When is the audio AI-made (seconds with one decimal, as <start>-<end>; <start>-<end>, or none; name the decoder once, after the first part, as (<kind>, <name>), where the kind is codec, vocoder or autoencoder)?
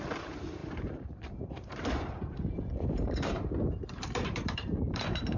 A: 0.0-5.4 (vocoder, BigVGAN v2)